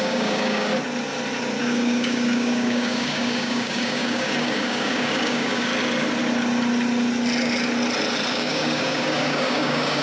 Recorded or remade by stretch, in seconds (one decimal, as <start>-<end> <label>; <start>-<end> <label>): 0.0-0.7 remade; 0.7-1.6 recorded; 1.6-5.7 remade; 5.7-8.3 recorded; 8.3-10.0 remade